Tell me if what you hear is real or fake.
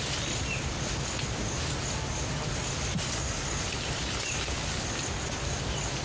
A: real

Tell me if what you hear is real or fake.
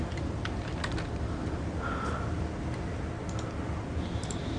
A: real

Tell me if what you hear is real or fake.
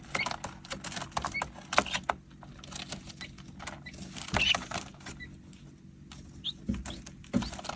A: real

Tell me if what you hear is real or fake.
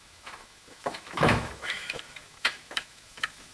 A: fake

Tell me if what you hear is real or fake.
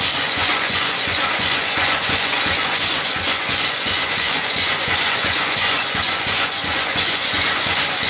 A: fake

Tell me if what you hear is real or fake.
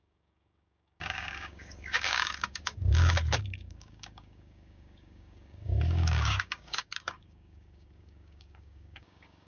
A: fake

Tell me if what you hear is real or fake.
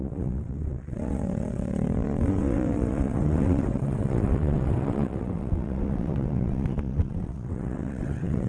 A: fake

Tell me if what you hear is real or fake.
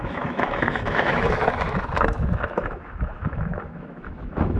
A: fake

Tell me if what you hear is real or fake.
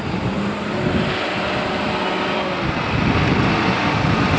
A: real